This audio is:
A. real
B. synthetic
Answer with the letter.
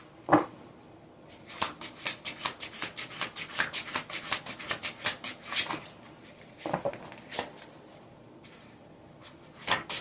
A